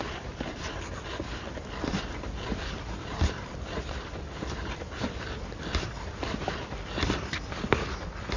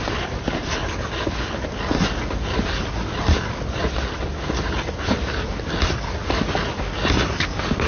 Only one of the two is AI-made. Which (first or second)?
first